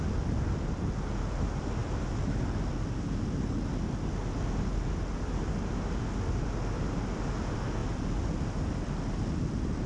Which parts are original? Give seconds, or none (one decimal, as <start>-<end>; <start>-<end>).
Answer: 0.0-9.9